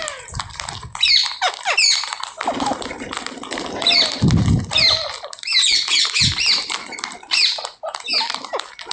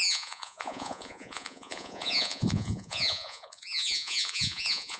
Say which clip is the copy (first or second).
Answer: second